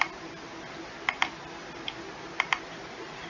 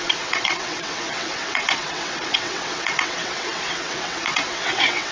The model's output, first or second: second